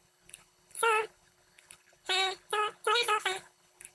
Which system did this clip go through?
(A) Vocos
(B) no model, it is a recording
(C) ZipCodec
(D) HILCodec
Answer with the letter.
D